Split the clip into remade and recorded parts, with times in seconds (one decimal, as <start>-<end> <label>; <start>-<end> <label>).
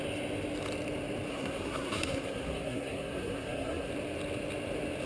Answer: 0.0-1.3 recorded; 1.3-3.9 remade; 3.9-5.1 recorded